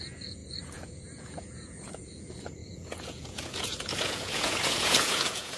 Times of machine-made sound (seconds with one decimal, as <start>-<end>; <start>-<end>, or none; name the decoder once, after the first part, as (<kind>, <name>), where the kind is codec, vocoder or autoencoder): 0.0-5.6 (vocoder, Vocos)